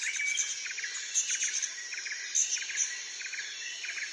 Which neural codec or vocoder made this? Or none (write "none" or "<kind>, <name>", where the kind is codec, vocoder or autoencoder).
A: none